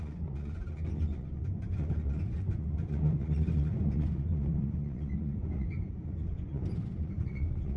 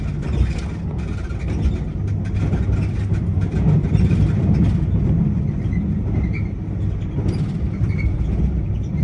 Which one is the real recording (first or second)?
second